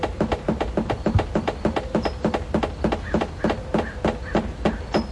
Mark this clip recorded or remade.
recorded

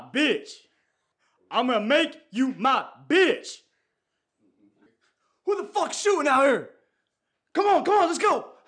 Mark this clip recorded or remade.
recorded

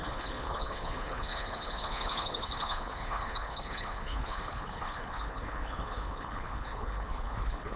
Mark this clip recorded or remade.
remade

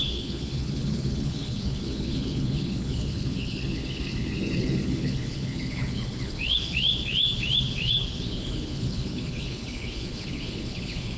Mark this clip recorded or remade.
remade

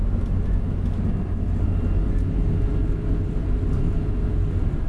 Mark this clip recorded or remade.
recorded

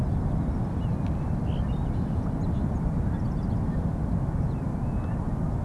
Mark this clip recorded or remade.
recorded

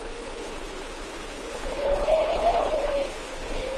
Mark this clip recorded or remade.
remade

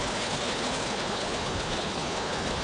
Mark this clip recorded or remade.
remade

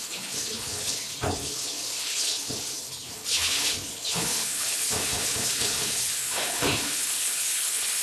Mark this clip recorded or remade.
remade